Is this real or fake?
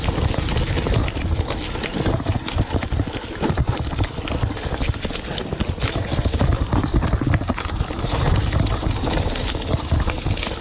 real